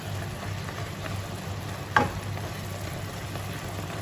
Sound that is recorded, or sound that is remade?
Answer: recorded